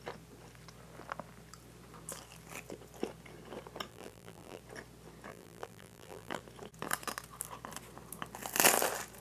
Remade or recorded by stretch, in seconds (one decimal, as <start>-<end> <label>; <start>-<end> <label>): 0.0-3.9 recorded; 3.9-4.6 remade; 4.6-5.3 recorded; 5.3-6.4 remade; 6.4-9.2 recorded